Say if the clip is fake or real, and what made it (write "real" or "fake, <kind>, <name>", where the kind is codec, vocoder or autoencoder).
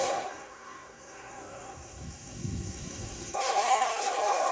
fake, codec, SNAC